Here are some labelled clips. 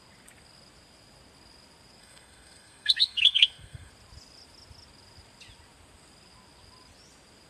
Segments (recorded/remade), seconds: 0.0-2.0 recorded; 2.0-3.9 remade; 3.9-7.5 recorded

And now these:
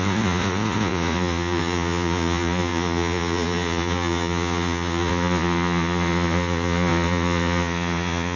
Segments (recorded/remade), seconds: 0.0-8.4 remade

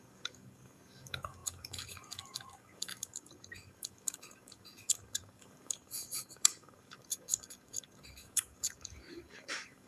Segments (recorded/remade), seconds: 0.0-9.9 remade

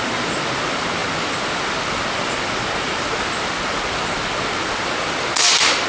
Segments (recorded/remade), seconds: 0.0-5.9 recorded

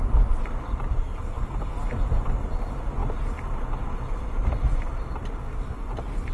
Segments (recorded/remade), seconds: 0.0-3.0 remade; 3.0-4.1 recorded; 4.1-6.3 remade

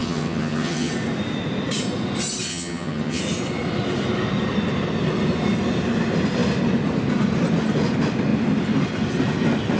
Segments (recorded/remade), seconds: 0.0-0.9 remade; 0.9-2.5 recorded; 2.5-3.2 remade; 3.2-9.8 recorded

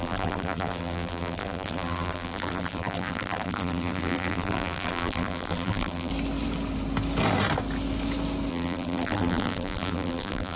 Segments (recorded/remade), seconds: 0.0-6.1 remade; 6.1-8.5 recorded; 8.5-10.6 remade